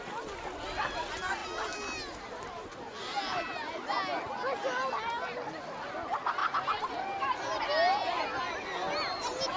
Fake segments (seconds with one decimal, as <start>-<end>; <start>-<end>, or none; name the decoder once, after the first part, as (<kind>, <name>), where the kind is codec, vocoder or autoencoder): none